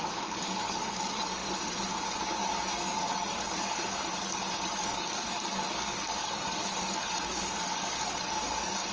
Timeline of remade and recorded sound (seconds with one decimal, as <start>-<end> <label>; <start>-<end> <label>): 0.0-1.4 remade; 1.4-2.3 recorded; 2.3-8.9 remade